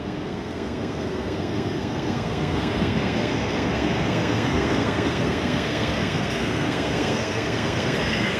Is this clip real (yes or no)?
no